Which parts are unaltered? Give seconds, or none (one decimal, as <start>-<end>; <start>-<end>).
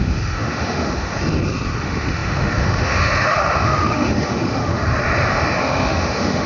1.1-1.8; 4.8-5.6